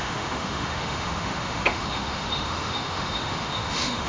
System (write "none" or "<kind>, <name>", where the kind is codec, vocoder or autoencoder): autoencoder, DAC-VAE